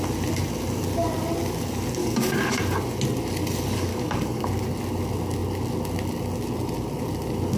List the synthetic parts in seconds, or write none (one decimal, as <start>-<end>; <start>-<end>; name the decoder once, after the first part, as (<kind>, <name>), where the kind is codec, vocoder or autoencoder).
2.0-2.6 (codec, DAC); 3.9-4.5